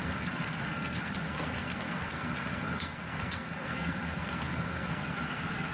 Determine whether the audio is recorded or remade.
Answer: remade